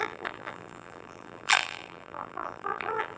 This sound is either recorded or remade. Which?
remade